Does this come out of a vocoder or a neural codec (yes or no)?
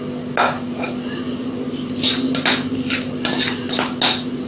no